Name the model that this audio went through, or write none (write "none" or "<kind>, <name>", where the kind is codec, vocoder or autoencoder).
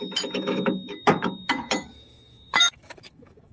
autoencoder, DAC-VAE